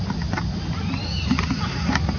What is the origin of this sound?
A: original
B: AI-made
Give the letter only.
A